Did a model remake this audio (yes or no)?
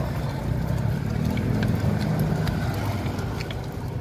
no